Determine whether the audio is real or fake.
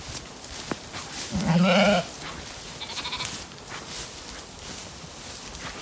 real